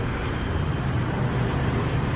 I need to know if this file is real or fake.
fake